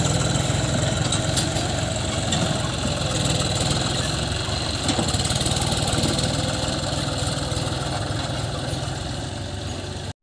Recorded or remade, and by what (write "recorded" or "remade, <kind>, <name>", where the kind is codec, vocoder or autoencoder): recorded